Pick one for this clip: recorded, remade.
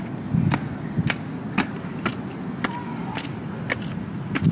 recorded